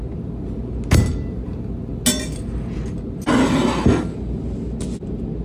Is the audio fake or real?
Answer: real